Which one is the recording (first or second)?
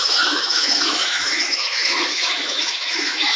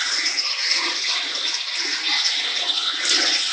second